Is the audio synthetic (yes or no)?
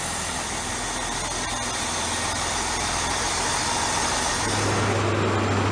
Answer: no